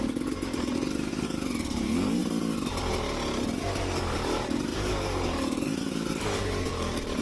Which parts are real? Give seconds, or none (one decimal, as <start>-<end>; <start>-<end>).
2.2-3.6